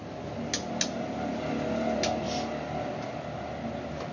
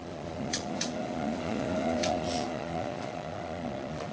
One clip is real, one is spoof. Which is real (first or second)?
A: first